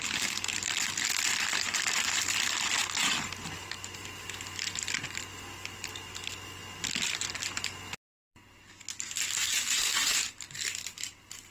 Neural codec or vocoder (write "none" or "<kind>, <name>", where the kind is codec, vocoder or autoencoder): vocoder, BigVGAN v2